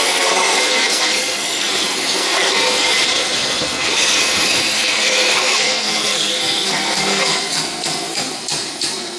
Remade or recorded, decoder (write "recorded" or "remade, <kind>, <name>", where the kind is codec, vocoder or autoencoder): remade, codec, SNAC